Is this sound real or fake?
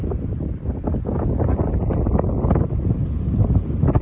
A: real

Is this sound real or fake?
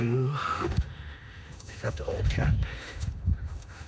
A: fake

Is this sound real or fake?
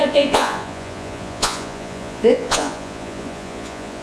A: fake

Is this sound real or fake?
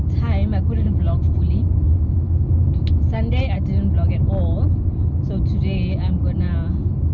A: real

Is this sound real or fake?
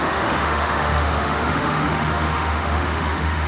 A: fake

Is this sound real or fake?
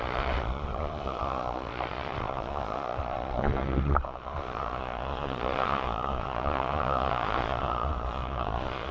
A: fake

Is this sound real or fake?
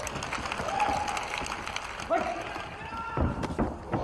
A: real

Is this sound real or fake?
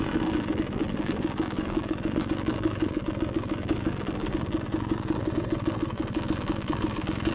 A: fake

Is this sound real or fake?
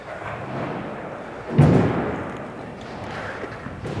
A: real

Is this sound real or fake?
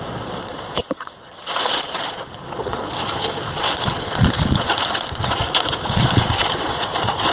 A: fake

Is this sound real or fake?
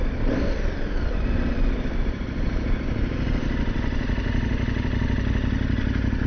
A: real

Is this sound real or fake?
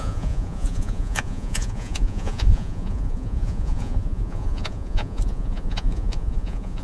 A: fake